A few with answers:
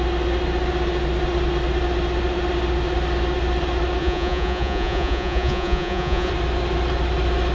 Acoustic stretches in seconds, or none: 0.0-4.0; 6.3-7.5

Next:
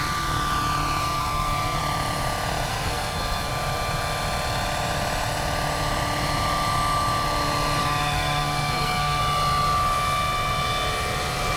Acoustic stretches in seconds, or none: 0.0-1.0; 1.8-2.7; 3.5-7.8; 9.2-11.6

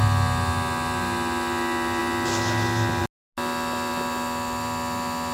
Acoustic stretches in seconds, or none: 0.0-5.3

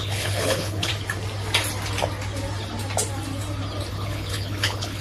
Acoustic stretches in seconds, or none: 0.9-3.9

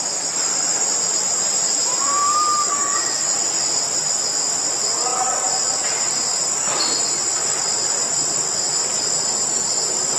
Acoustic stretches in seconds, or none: 0.0-10.2

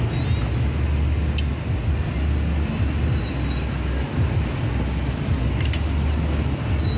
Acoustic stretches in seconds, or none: 0.0-7.0